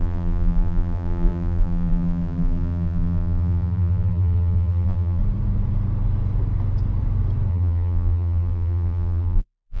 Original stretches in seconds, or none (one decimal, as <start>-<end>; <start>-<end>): 5.2-7.5